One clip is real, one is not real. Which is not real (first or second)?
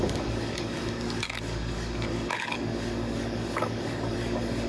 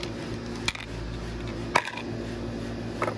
first